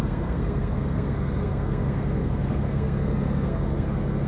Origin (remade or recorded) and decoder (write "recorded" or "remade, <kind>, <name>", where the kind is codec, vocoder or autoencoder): remade, codec, SNAC